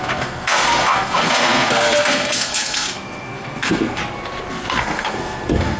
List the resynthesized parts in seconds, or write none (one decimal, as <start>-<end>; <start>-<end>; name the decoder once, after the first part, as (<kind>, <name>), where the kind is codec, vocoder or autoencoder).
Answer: 0.0-4.0 (codec, SNAC); 4.5-5.8